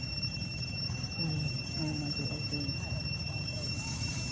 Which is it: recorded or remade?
remade